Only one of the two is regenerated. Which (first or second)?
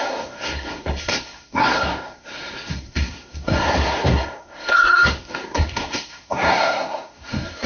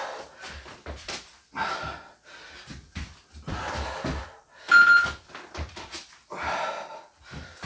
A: first